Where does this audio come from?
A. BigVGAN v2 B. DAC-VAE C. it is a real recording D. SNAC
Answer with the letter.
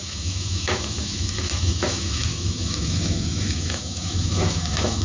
B